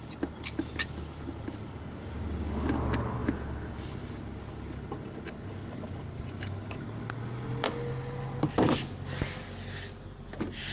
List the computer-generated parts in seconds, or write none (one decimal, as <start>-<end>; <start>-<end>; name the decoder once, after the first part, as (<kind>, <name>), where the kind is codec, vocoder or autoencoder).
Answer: none